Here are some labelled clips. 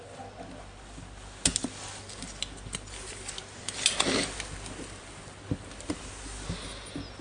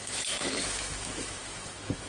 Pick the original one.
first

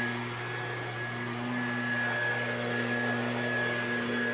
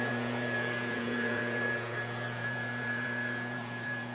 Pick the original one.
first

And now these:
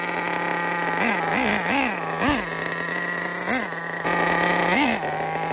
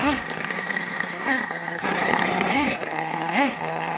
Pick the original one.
first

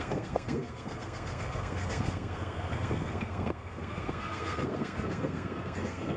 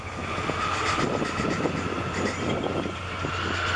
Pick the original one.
second